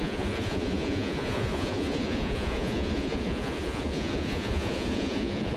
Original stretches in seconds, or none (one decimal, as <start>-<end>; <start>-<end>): none